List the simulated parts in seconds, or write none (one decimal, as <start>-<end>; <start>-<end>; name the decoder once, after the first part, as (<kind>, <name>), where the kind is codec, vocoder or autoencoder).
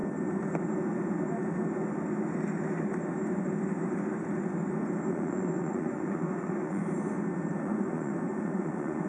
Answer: 5.1-6.8 (vocoder, Vocos); 7.5-9.1